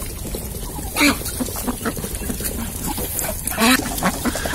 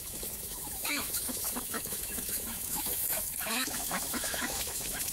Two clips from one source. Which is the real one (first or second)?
first